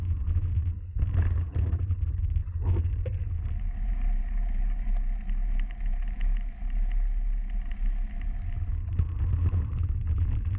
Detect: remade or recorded recorded